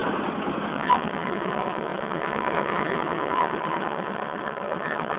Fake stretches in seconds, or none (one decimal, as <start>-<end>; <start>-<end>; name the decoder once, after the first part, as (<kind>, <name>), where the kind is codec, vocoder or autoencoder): 0.7-5.2 (vocoder, WaveNeXt)